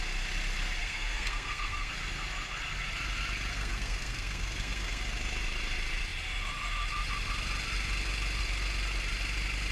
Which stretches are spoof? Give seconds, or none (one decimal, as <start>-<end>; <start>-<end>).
0.8-1.9; 3.5-5.0